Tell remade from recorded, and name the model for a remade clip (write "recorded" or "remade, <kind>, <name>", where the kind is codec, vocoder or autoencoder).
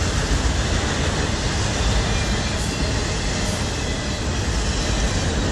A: recorded